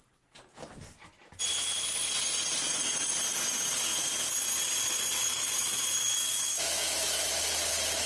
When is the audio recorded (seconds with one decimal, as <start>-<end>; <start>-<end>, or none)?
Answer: 0.0-1.5; 2.0-5.2; 7.3-8.1